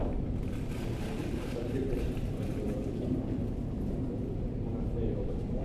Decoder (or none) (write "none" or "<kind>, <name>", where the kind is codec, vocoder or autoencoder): vocoder, BigVGAN v2